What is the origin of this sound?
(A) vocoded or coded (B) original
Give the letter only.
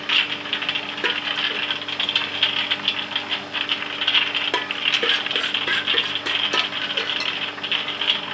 B